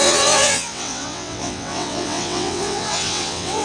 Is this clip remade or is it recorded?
remade